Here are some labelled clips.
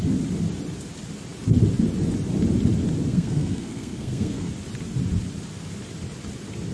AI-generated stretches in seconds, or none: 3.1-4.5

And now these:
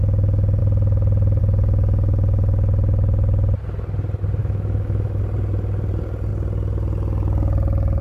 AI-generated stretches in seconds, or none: 4.4-5.2